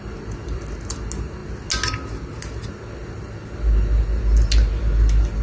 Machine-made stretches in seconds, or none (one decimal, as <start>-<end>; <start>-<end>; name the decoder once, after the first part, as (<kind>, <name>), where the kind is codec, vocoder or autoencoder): none